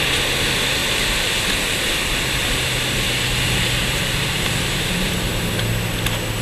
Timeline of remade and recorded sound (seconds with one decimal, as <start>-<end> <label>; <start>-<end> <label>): 0.0-0.8 recorded; 0.8-1.6 remade; 1.6-2.4 recorded; 2.4-5.1 remade; 5.1-6.4 recorded